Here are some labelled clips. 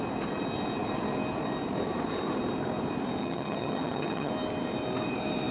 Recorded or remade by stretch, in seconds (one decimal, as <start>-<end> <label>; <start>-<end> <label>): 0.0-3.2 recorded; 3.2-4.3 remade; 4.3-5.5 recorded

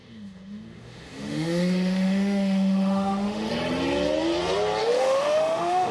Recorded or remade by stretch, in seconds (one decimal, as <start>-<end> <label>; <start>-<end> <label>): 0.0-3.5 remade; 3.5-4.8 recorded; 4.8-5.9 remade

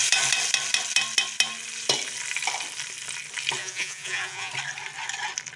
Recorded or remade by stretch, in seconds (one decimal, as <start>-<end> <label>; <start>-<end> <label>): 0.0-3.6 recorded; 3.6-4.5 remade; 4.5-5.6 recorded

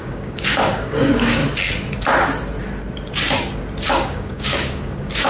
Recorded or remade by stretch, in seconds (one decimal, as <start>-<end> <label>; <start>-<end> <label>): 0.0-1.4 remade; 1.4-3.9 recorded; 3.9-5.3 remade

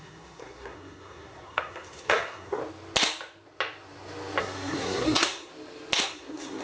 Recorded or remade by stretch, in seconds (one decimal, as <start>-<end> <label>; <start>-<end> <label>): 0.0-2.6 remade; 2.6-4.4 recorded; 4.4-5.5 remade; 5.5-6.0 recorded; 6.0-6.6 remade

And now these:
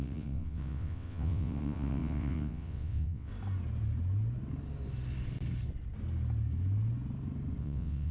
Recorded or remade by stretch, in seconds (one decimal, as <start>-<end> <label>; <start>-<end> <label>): 0.0-3.3 remade; 3.3-7.6 recorded; 7.6-8.1 remade